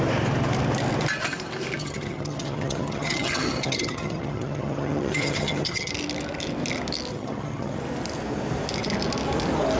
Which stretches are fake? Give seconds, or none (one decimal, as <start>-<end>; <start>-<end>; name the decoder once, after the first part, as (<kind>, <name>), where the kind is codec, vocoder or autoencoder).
1.8-5.9 (vocoder, HiFi-GAN); 7.1-7.8